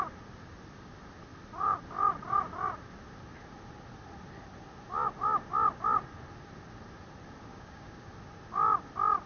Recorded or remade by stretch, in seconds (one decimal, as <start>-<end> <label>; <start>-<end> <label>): 0.0-7.5 recorded; 7.5-8.1 remade; 8.1-9.3 recorded